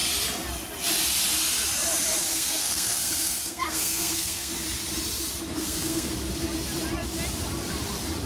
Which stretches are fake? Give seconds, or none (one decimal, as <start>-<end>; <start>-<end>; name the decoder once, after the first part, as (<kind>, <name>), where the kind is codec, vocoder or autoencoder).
2.3-4.5 (codec, SNAC); 5.6-6.1